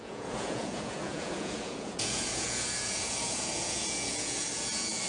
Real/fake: fake